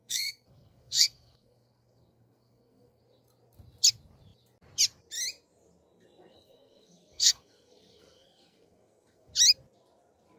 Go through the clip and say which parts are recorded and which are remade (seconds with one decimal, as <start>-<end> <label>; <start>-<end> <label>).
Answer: 0.0-3.0 remade; 3.0-6.3 recorded; 6.3-9.3 remade; 9.3-10.4 recorded